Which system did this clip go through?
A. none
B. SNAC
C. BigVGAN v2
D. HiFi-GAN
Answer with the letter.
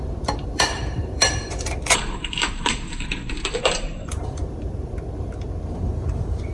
C